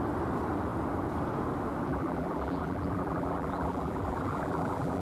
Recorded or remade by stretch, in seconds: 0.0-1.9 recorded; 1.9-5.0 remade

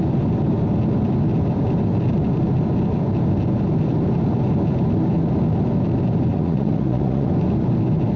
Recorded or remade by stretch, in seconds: 0.0-6.3 recorded; 6.3-7.3 remade; 7.3-8.2 recorded

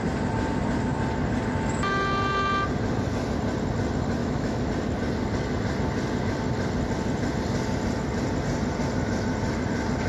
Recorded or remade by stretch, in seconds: 0.0-4.2 recorded; 4.2-4.7 remade; 4.7-10.1 recorded

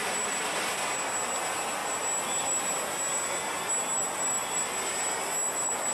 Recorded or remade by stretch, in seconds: 0.0-0.7 remade; 0.7-5.9 recorded